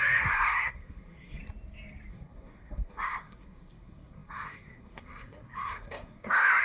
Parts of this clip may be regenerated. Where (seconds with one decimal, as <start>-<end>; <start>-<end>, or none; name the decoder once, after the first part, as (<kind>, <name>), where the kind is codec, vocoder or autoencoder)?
0.0-1.4 (codec, SNAC); 2.1-6.6